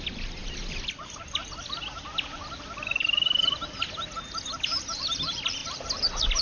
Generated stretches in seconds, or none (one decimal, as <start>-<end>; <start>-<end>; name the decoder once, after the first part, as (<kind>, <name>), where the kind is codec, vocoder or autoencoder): 0.4-3.6 (vocoder, BigVGAN v2); 5.6-6.4